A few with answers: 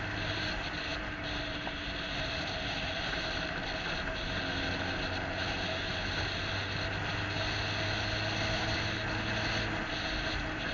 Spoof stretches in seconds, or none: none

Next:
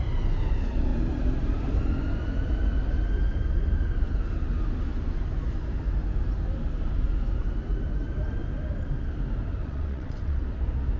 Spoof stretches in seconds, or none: 9.6-10.4 (vocoder, WaveNeXt)

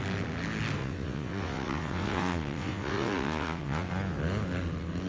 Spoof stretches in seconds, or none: 0.8-3.9 (vocoder, WaveNeXt)

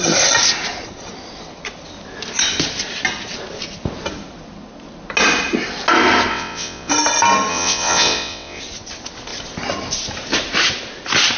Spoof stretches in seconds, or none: 6.3-6.9 (vocoder, WaveNeXt); 7.5-8.6

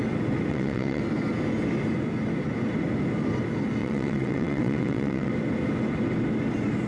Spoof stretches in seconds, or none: 0.5-1.0 (vocoder, WaveNeXt); 3.8-5.3

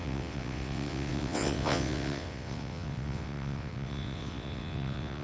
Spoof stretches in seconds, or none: 0.0-5.2 (vocoder, WaveNeXt)

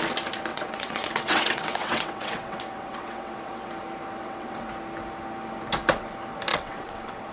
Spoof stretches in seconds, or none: 0.5-3.7 (vocoder, WaveNeXt); 4.2-4.7; 6.5-7.3